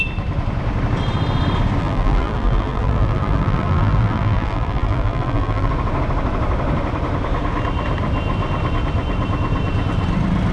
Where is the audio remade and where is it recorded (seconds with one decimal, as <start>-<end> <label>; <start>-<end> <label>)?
0.0-1.8 recorded; 1.8-5.7 remade; 5.7-10.5 recorded